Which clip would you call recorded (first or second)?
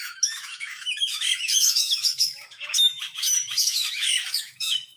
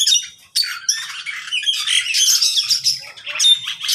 second